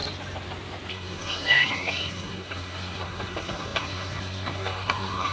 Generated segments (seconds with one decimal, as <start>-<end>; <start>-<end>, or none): 0.9-5.3